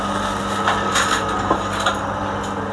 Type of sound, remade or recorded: recorded